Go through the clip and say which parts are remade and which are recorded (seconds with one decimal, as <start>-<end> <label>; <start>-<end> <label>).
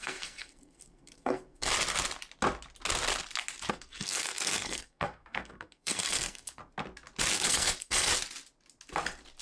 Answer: 0.0-1.7 remade; 1.7-3.7 recorded; 3.7-6.6 remade; 6.6-7.3 recorded; 7.3-8.1 remade; 8.1-9.4 recorded